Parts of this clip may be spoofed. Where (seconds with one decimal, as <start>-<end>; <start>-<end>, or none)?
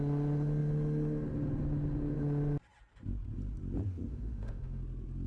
4.1-4.8